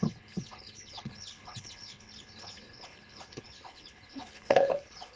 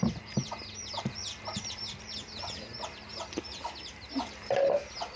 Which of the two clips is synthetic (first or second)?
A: first